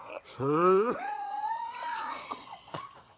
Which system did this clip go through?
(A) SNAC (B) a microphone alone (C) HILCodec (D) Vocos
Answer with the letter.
D